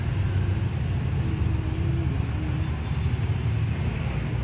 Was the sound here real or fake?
real